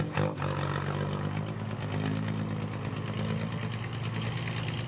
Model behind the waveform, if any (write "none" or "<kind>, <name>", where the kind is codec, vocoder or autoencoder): none